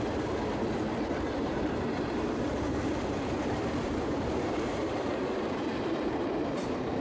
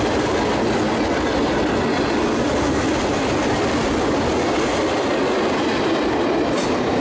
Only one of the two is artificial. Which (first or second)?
first